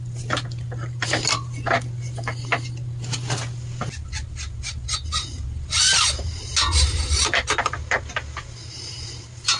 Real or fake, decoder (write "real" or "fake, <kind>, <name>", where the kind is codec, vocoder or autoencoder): real